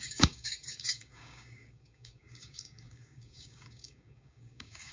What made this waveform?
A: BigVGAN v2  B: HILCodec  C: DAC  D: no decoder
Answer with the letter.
C